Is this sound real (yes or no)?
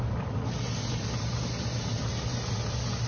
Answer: yes